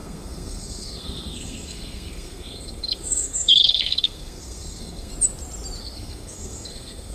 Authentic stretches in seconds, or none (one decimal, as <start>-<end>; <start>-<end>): 5.1-5.8